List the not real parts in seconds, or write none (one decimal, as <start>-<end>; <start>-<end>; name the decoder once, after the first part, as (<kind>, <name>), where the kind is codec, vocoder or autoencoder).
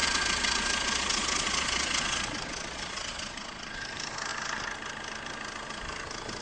0.0-3.8 (vocoder, Vocos)